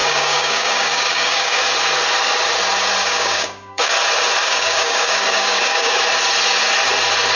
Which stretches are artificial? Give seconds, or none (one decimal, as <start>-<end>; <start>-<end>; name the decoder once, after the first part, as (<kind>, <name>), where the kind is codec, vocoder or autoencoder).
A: 0.0-1.6 (codec, DAC); 3.0-3.9; 4.4-6.0